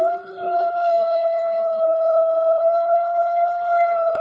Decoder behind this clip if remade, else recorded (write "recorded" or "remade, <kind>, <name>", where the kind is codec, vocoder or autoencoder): remade, codec, HILCodec